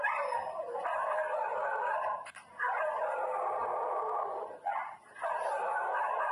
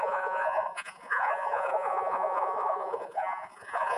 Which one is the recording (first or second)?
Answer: first